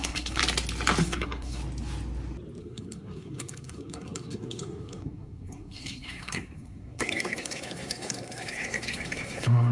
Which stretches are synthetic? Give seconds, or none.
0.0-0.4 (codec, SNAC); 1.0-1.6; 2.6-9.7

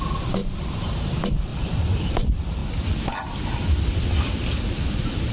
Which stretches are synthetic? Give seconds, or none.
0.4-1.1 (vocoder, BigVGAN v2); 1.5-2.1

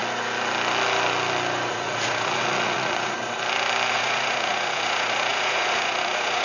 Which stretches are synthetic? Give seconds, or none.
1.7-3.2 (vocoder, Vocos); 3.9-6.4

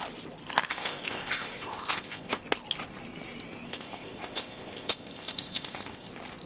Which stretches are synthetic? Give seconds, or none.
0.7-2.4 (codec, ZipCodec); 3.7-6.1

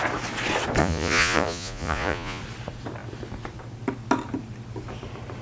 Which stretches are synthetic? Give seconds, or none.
0.8-2.4 (vocoder, Vocos)

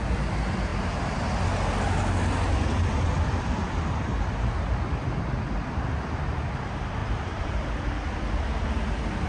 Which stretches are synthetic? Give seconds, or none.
7.0-7.7 (vocoder, BigVGAN v2)